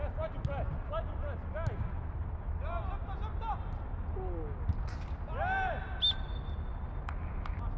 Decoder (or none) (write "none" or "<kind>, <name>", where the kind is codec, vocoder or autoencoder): none